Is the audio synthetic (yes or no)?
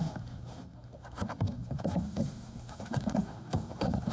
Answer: yes